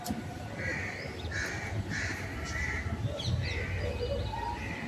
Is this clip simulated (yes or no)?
no